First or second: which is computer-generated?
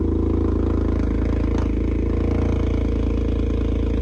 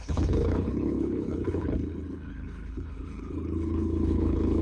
second